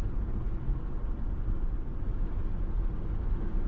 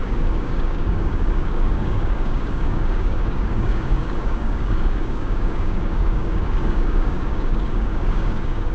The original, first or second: first